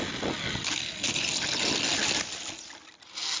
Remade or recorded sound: recorded